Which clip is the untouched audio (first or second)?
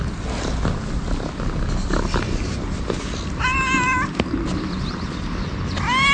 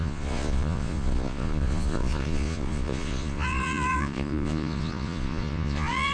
first